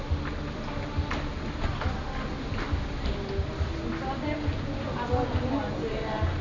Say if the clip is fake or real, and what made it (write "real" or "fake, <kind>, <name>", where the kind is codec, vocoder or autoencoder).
real